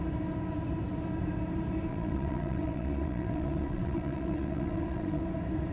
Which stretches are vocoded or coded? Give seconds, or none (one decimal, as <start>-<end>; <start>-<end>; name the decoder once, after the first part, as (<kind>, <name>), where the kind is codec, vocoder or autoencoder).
1.9-5.2 (vocoder, WaveNeXt)